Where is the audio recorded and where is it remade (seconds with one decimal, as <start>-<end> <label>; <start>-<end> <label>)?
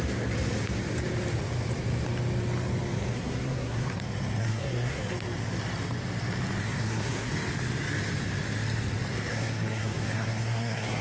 0.0-3.1 recorded; 3.1-4.0 remade; 4.0-4.4 recorded; 4.4-5.0 remade; 5.0-6.6 recorded; 6.6-7.3 remade; 7.3-9.3 recorded; 9.3-11.0 remade